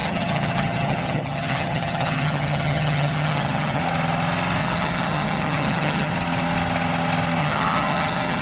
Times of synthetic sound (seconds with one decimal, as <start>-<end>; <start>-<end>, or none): 0.0-3.8; 4.6-6.1; 7.4-8.4